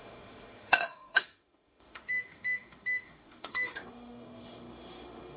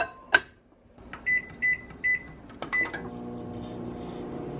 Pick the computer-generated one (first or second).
first